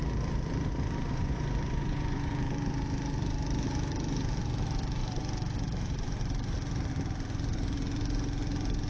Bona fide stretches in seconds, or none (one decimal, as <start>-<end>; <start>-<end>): 0.0-1.1; 2.3-8.9